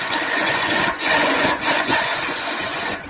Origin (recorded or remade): remade